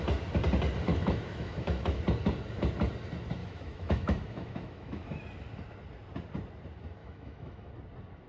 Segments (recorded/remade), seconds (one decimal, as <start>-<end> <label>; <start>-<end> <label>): 0.0-0.9 recorded; 0.9-2.0 remade; 2.0-3.4 recorded; 3.4-5.2 remade; 5.2-7.0 recorded; 7.0-7.7 remade; 7.7-8.3 recorded